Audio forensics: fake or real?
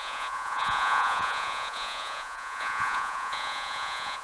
fake